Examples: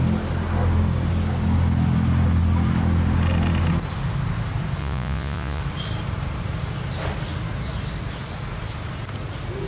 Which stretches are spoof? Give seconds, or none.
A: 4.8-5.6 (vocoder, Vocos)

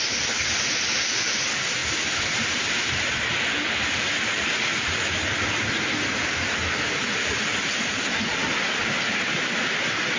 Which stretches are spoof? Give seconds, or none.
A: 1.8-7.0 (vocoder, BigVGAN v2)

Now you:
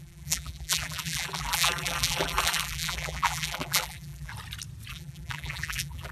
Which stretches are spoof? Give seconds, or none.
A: 0.0-4.3 (vocoder, BigVGAN v2); 4.9-6.1

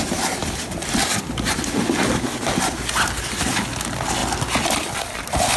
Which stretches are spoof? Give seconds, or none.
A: none

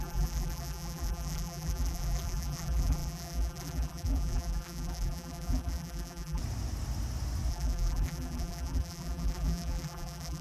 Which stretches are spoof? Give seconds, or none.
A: 0.0-6.4 (vocoder, BigVGAN v2); 7.5-10.4

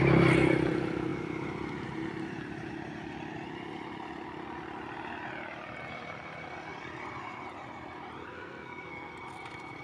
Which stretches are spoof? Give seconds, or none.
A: 8.3-9.1 (codec, SNAC)

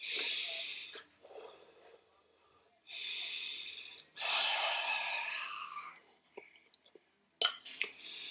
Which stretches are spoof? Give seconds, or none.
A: 4.3-4.9 (codec, SNAC)